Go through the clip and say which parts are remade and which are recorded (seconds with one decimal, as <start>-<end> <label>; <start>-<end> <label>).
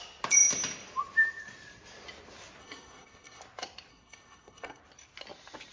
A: 0.0-2.6 recorded; 2.6-3.4 remade; 3.4-3.9 recorded; 3.9-4.8 remade; 4.8-5.7 recorded